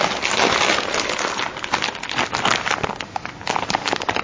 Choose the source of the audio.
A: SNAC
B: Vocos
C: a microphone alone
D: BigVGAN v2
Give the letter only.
C